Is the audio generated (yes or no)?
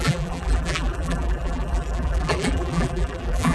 yes